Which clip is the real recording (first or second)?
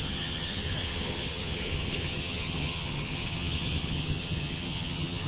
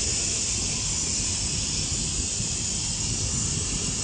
second